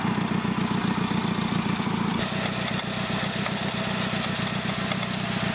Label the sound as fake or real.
real